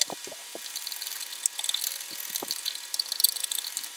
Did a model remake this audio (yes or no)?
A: no